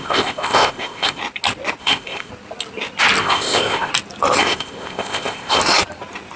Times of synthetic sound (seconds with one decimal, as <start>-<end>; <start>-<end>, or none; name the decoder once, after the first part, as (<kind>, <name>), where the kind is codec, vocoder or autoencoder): 0.0-1.2 (codec, ZipCodec); 1.8-2.3; 3.2-3.9; 4.4-5.6